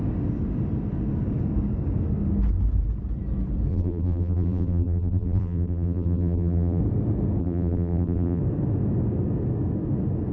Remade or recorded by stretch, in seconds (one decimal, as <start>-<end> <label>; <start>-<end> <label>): 0.0-3.7 recorded; 3.7-6.8 remade; 6.8-7.4 recorded; 7.4-8.4 remade; 8.4-10.3 recorded